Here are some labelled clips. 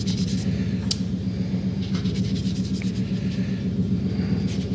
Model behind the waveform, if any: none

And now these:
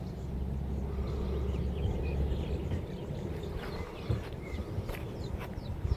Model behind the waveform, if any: vocoder, BigVGAN v2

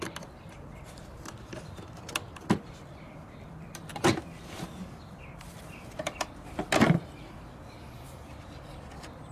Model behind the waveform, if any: vocoder, BigVGAN v2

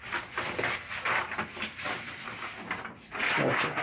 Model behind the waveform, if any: none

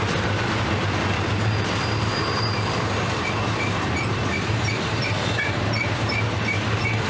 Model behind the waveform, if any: vocoder, BigVGAN v2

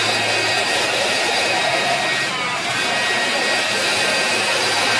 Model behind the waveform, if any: vocoder, BigVGAN v2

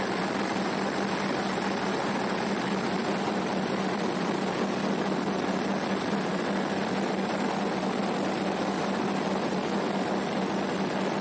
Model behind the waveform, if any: vocoder, BigVGAN v2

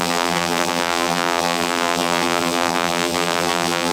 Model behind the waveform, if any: vocoder, BigVGAN v2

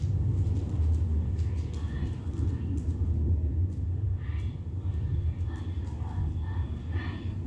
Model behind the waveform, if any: none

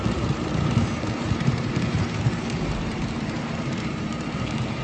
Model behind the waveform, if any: vocoder, BigVGAN v2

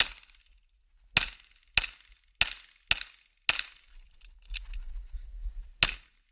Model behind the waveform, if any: none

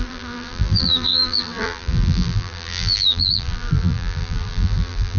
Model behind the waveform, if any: vocoder, BigVGAN v2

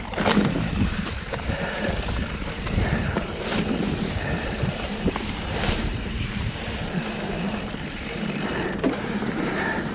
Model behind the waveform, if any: vocoder, BigVGAN v2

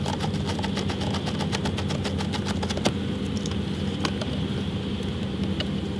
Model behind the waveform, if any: none